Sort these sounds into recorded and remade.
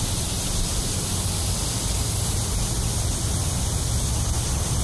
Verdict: recorded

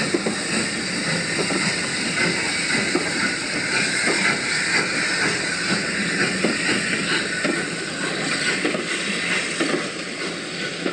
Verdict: recorded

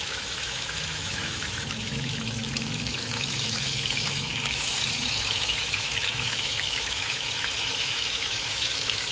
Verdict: remade